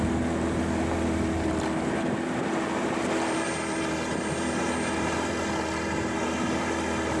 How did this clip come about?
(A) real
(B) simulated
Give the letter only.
A